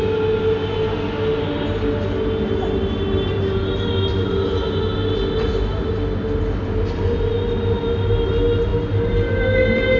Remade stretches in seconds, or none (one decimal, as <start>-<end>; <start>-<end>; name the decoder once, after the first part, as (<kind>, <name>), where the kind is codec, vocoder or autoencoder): none